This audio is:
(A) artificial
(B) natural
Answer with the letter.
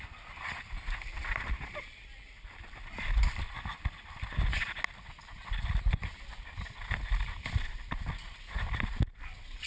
B